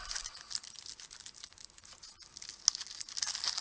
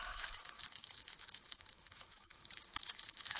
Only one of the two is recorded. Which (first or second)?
first